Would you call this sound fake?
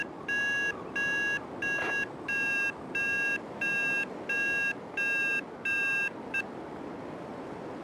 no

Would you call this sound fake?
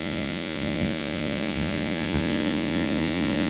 yes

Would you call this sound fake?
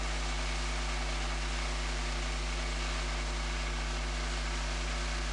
no